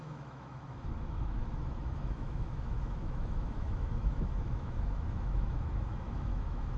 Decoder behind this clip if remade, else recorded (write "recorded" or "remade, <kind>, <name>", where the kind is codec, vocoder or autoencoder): remade, autoencoder, DAC-VAE